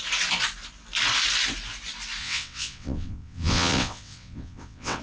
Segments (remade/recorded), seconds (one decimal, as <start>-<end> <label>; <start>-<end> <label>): 0.0-2.2 recorded; 2.2-5.0 remade